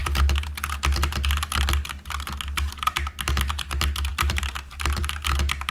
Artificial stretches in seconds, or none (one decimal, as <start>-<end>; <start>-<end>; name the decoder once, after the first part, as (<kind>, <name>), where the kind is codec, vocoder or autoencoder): none